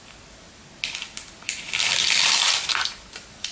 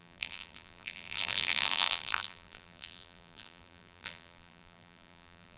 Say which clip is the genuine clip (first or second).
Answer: first